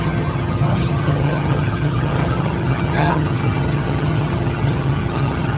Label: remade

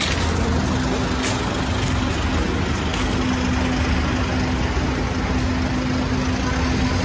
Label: recorded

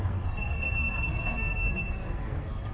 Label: remade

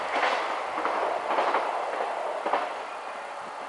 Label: recorded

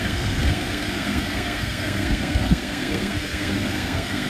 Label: remade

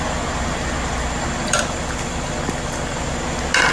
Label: recorded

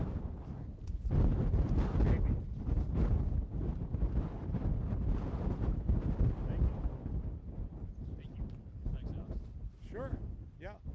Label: recorded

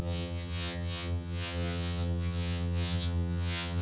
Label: remade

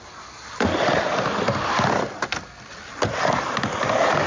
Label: recorded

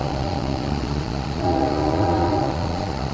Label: remade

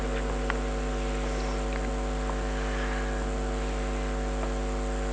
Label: recorded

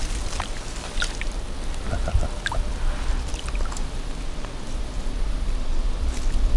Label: recorded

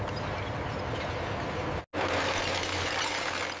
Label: recorded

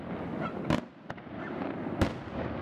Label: recorded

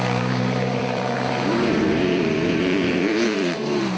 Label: remade